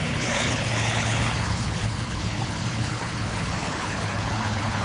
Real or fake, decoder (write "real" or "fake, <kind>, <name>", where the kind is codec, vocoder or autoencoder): fake, codec, HILCodec